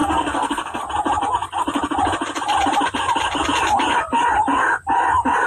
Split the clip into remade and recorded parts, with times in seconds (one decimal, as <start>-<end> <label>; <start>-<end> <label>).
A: 0.0-0.8 remade; 0.8-5.5 recorded